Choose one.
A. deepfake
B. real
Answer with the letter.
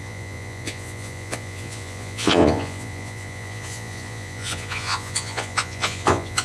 A